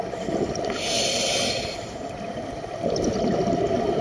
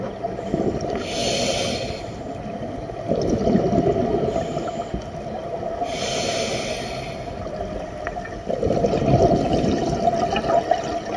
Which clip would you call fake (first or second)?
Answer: first